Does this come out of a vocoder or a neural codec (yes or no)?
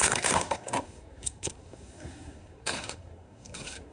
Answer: yes